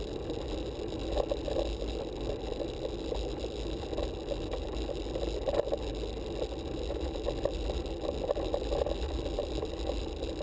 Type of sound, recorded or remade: recorded